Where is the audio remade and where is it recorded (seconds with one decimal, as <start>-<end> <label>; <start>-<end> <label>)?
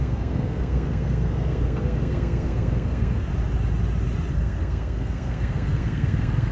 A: 0.0-3.3 remade; 3.3-4.3 recorded; 4.3-6.5 remade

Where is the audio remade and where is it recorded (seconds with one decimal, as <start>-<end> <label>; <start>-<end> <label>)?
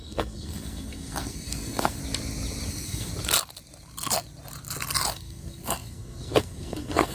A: 0.0-2.0 remade; 2.0-2.7 recorded; 2.7-3.1 remade; 3.1-5.1 recorded; 5.1-7.1 remade